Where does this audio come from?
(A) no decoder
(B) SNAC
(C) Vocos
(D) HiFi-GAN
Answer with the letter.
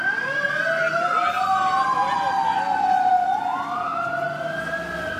A